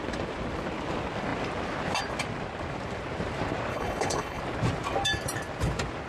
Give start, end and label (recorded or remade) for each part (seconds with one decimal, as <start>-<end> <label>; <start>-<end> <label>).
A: 0.0-3.7 recorded; 3.7-4.4 remade; 4.4-6.1 recorded

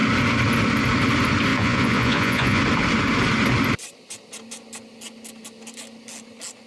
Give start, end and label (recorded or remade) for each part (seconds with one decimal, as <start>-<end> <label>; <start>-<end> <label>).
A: 0.0-1.5 recorded; 1.5-2.6 remade; 2.6-6.7 recorded

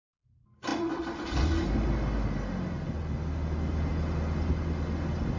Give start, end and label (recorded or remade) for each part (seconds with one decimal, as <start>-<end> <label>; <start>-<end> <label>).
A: 0.0-5.4 recorded

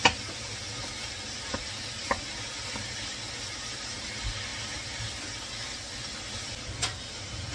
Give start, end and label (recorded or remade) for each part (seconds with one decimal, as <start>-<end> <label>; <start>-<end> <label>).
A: 0.0-7.5 recorded

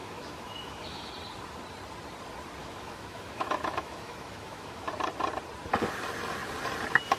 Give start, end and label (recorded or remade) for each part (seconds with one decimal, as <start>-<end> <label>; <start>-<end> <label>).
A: 0.0-1.1 remade; 1.1-2.6 recorded; 2.6-4.9 remade; 4.9-7.2 recorded

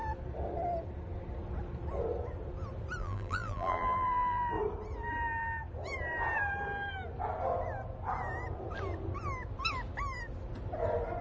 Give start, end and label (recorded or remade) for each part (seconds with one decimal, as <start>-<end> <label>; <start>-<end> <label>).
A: 0.0-3.0 recorded; 3.0-4.5 remade; 4.5-11.2 recorded

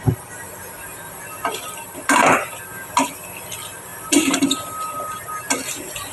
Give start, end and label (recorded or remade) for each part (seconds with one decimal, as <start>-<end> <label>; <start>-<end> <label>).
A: 0.0-6.1 recorded